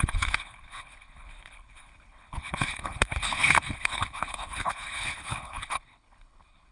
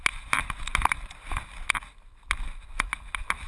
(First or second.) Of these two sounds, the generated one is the first